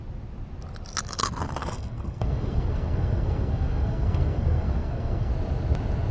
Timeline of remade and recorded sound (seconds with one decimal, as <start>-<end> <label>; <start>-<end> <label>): 0.0-1.6 recorded; 1.6-5.3 remade; 5.3-6.1 recorded